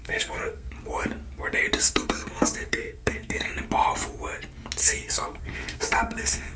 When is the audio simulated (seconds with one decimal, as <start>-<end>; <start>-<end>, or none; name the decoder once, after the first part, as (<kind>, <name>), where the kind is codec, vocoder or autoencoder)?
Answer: 0.0-0.7 (codec, SNAC); 1.8-3.5; 4.8-6.6